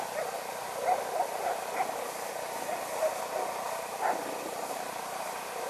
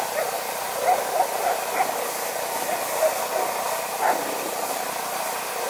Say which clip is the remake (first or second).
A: first